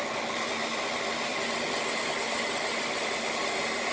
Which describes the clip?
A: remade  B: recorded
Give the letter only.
B